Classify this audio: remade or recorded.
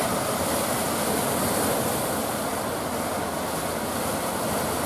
recorded